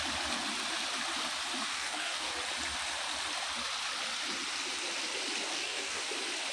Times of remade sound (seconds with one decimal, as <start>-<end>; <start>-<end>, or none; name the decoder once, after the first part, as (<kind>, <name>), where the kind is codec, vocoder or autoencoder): 1.7-2.3 (codec, DAC); 5.5-6.0